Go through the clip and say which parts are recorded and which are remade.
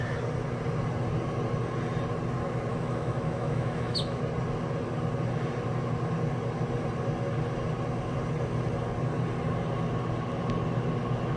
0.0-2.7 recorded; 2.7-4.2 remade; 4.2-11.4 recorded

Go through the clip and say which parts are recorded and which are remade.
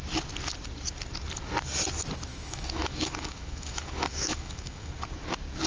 0.0-2.3 recorded; 2.3-4.9 remade; 4.9-5.7 recorded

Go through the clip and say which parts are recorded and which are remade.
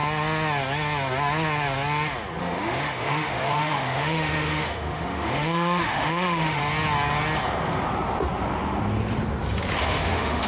0.0-2.4 recorded; 2.4-6.6 remade; 6.6-9.8 recorded; 9.8-10.5 remade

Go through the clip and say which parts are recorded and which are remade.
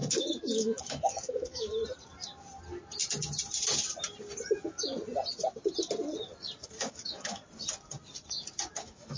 0.0-1.8 remade; 1.8-6.8 recorded; 6.8-7.4 remade; 7.4-8.7 recorded; 8.7-9.2 remade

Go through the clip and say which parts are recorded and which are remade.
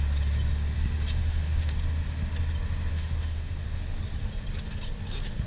0.0-1.2 recorded; 1.2-1.7 remade; 1.7-2.9 recorded; 2.9-3.8 remade; 3.8-5.5 recorded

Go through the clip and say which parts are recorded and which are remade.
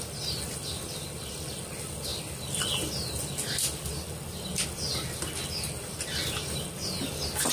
0.0-7.5 recorded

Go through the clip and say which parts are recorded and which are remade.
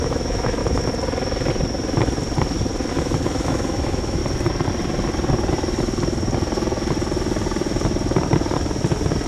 0.0-0.6 remade; 0.6-2.9 recorded; 2.9-4.2 remade; 4.2-9.3 recorded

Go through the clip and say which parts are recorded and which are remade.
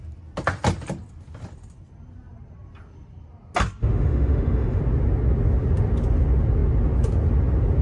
0.0-3.8 recorded; 3.8-4.8 remade; 4.8-7.8 recorded